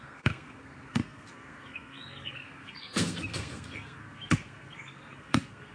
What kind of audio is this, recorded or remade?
remade